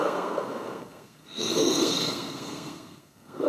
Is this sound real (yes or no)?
no